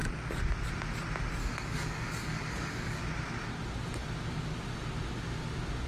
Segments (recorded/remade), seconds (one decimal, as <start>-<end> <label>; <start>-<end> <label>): 0.0-1.4 recorded; 1.4-3.0 remade; 3.0-5.9 recorded

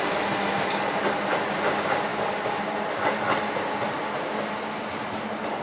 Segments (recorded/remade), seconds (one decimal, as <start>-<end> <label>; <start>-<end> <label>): 0.0-5.6 recorded

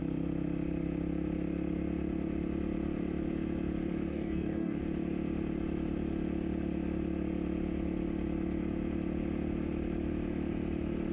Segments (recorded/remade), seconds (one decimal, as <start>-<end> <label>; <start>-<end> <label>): 0.0-4.1 recorded; 4.1-4.8 remade; 4.8-11.1 recorded

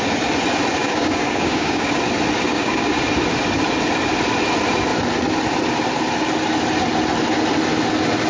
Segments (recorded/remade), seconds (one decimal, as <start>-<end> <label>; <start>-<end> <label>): 0.0-0.7 recorded; 0.7-2.0 remade; 2.0-2.5 recorded; 2.5-3.0 remade; 3.0-8.3 recorded